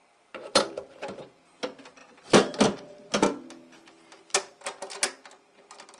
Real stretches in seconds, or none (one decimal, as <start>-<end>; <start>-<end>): 0.6-6.0